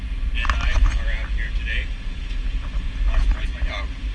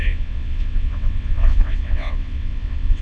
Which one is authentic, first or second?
first